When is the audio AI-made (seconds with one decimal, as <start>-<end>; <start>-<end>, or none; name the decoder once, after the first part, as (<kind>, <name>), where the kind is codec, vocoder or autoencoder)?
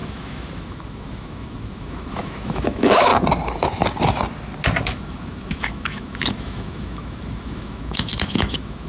0.0-3.1 (autoencoder, DAC-VAE); 4.8-8.9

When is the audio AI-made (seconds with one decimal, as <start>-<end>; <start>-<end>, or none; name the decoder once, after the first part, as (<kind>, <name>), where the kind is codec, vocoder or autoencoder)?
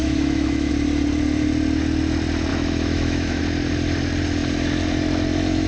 0.0-0.7 (autoencoder, DAC-VAE); 2.5-3.4